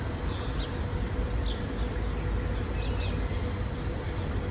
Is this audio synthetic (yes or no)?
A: no